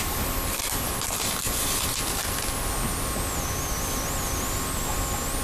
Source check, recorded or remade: recorded